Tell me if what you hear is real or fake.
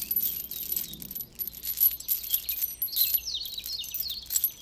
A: real